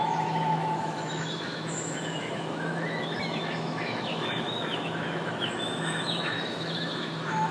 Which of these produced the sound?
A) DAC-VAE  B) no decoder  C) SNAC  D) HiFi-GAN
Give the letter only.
A